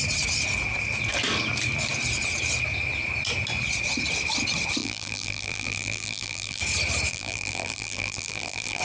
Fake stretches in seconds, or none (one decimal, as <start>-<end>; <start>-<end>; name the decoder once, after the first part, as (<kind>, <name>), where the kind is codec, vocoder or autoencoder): 4.8-6.6 (vocoder, BigVGAN v2); 7.1-8.8